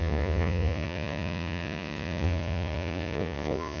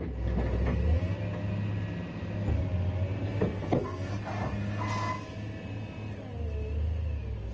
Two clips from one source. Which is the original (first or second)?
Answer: second